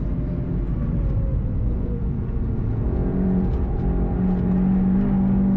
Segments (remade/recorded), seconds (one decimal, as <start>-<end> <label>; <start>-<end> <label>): 0.0-1.3 recorded; 1.3-3.8 remade; 3.8-5.6 recorded